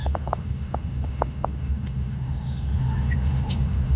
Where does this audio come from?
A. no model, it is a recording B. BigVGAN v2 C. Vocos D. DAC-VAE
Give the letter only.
D